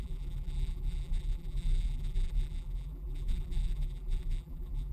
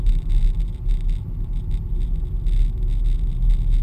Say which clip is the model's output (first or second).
first